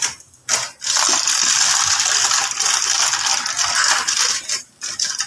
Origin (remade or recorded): recorded